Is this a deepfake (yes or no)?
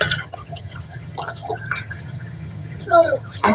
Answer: yes